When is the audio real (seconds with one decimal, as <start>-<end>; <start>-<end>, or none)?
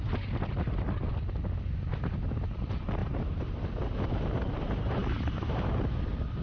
0.0-3.0; 3.6-5.0; 5.6-6.4